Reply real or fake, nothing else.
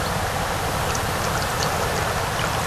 fake